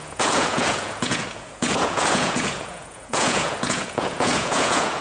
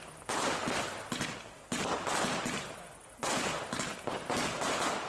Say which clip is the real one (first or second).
second